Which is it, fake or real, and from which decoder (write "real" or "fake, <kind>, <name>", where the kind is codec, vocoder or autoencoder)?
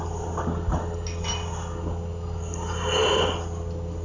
real